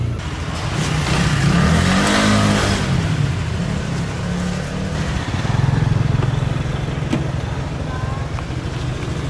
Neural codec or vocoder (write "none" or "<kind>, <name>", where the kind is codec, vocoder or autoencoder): none